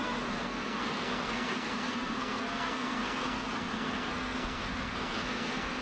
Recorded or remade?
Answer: remade